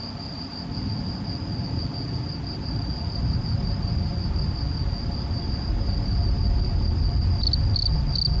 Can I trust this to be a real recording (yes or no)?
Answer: yes